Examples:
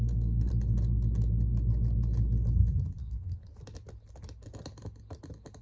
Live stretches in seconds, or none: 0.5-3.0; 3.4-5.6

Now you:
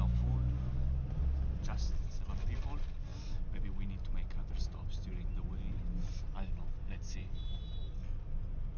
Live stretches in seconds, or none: 0.0-8.8

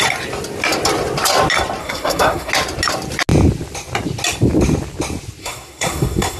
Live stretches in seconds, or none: 0.0-1.8; 2.5-5.4

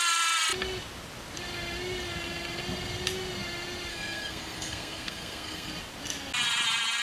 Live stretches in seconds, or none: 0.0-3.9; 5.7-7.0

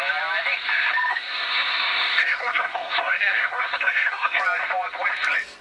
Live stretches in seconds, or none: 0.0-1.1; 4.4-5.6

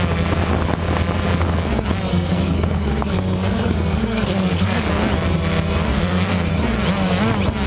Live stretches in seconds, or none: 0.0-2.1; 4.9-5.9; 6.5-7.7